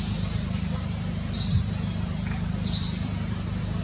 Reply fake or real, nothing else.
fake